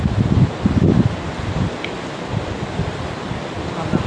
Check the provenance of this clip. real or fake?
fake